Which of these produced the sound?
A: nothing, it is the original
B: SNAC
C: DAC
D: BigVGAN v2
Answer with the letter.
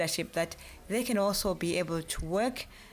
A